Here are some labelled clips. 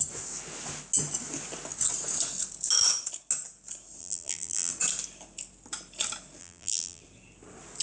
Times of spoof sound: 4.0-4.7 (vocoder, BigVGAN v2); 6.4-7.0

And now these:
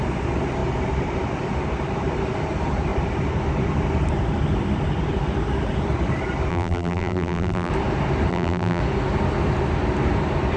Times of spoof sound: 6.5-7.7 (vocoder, BigVGAN v2); 8.3-8.8

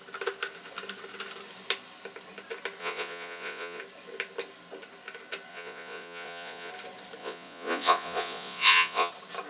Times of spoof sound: 2.8-3.8 (vocoder, Vocos); 5.5-6.7; 7.2-9.1

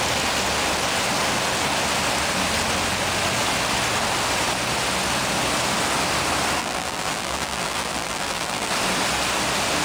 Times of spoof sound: 6.6-8.7 (vocoder, BigVGAN v2)